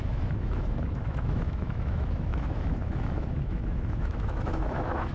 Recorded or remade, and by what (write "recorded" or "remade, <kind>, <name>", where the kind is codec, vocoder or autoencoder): remade, autoencoder, DAC-VAE